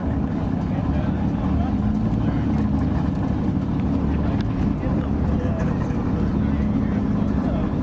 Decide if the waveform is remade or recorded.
recorded